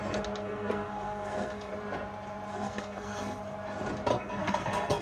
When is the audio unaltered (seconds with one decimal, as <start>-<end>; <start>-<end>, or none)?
0.0-0.4; 1.7-2.5; 3.4-4.1